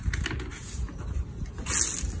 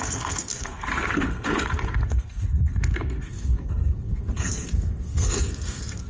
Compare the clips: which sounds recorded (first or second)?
first